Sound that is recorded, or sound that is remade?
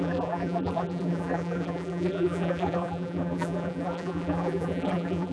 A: remade